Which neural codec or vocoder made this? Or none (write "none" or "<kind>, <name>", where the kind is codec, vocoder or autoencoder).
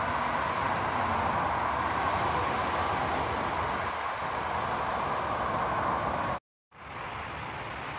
none